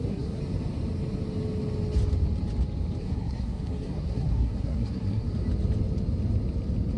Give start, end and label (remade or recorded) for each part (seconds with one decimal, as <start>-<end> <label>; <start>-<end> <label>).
0.0-0.4 remade; 0.4-3.0 recorded; 3.0-5.3 remade; 5.3-7.0 recorded